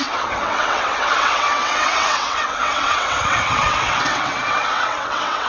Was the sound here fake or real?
fake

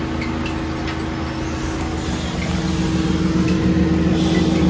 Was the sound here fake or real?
real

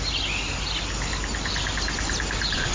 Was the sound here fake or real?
fake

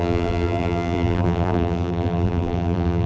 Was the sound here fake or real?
fake